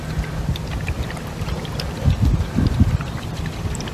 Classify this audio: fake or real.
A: real